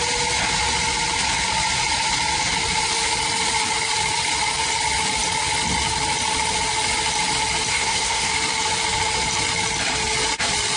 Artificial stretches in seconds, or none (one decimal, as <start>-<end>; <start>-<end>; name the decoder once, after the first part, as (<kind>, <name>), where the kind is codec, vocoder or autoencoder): 7.7-8.3 (codec, SNAC)